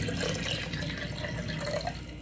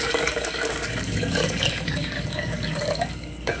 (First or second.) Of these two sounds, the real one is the first